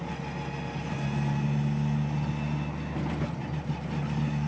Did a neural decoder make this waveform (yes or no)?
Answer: no